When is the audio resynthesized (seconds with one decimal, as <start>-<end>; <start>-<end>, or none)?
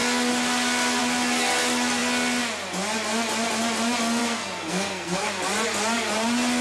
4.2-5.3